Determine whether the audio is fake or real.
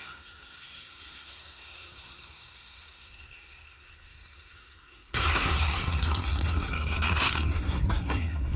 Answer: fake